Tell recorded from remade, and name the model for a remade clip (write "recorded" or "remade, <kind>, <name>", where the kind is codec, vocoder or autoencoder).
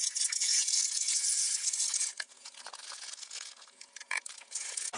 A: remade, vocoder, Vocos